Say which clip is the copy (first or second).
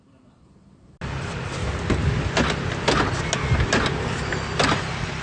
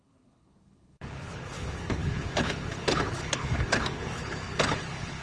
second